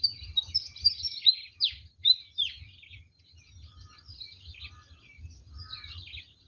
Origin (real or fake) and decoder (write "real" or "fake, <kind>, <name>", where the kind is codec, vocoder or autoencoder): real